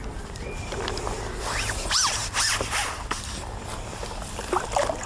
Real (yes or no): yes